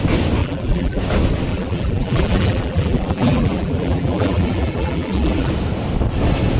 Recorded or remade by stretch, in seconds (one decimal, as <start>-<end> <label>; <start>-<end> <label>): 0.0-0.4 recorded; 0.4-1.0 remade; 1.0-1.5 recorded; 1.5-5.5 remade; 5.5-6.6 recorded